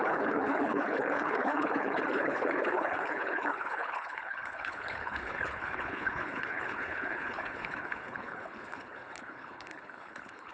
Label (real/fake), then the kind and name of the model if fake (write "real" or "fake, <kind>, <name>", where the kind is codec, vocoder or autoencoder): fake, codec, HILCodec